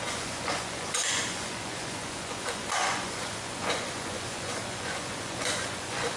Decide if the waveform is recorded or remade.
remade